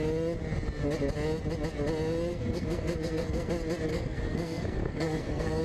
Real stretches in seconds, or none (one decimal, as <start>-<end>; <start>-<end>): 0.0-2.3; 3.5-3.9